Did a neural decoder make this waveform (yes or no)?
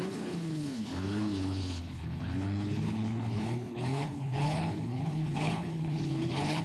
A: yes